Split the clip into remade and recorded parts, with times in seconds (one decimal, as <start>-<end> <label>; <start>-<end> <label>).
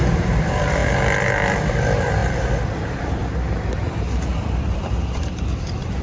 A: 0.0-0.8 remade; 0.8-1.7 recorded; 1.7-3.2 remade; 3.2-4.3 recorded; 4.3-6.0 remade